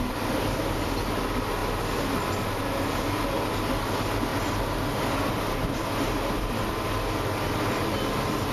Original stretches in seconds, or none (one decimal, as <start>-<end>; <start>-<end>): 0.0-8.5